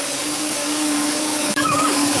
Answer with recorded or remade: remade